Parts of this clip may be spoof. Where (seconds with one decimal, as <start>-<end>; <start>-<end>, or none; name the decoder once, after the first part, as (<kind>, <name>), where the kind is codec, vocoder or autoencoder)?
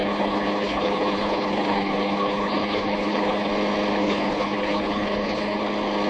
0.0-3.5 (codec, HILCodec); 4.0-5.6